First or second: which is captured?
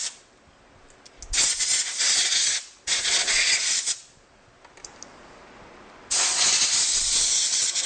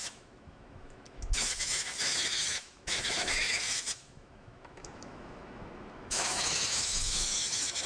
first